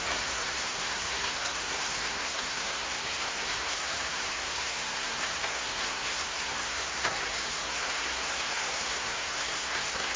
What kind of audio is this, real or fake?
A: fake